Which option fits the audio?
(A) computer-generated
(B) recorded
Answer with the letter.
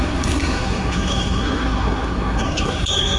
A